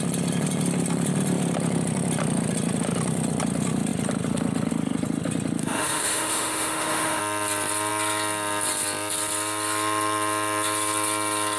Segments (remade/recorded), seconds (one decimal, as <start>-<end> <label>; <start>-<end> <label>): 0.0-5.6 recorded; 5.6-7.2 remade; 7.2-11.6 recorded